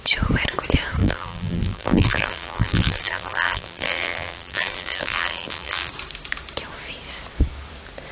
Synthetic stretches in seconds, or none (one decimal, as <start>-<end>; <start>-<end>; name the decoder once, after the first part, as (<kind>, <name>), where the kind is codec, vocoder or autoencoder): 1.0-5.9 (vocoder, BigVGAN v2)